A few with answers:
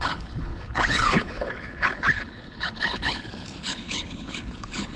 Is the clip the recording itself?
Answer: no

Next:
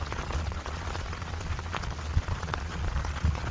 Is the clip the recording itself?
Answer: no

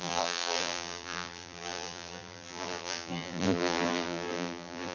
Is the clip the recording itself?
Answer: no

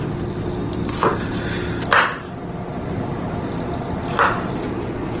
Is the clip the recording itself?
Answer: yes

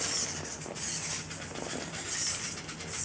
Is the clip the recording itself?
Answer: yes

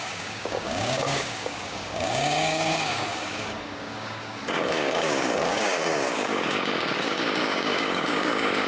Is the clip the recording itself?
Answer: no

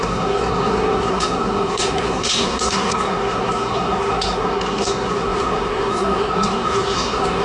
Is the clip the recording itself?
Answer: no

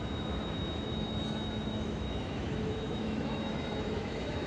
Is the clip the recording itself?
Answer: no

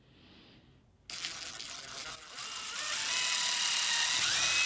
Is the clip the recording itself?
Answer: yes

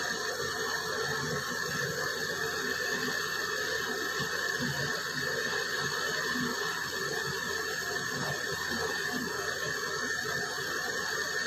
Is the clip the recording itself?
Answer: yes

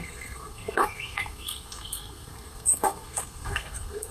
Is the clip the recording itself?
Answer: no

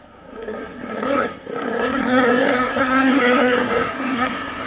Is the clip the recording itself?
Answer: no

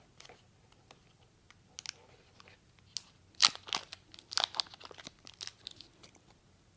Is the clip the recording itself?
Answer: yes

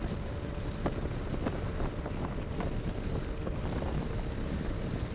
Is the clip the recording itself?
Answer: yes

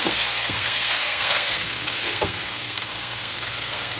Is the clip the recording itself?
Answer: no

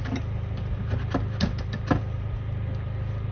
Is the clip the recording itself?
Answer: yes